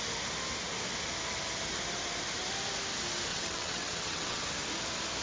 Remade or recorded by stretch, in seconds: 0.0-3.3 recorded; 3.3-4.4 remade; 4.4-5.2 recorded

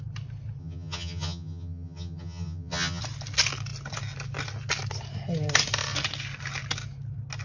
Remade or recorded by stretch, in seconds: 0.0-0.6 recorded; 0.6-3.0 remade; 3.0-7.4 recorded

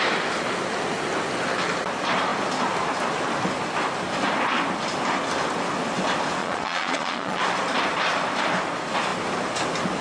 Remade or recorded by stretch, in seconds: 0.0-6.4 recorded; 6.4-7.4 remade; 7.4-10.0 recorded

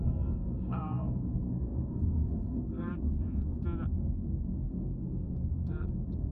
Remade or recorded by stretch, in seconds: 0.0-2.9 remade; 2.9-4.0 recorded; 4.0-6.3 remade